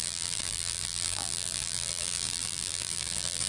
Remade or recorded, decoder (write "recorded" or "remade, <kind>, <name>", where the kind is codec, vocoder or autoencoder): remade, vocoder, BigVGAN v2